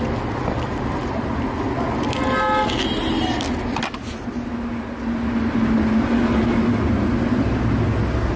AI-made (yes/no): no